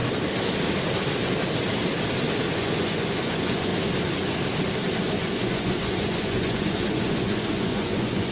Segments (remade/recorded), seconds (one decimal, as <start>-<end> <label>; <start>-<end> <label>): 0.0-2.5 recorded; 2.5-3.7 remade; 3.7-5.0 recorded; 5.0-8.3 remade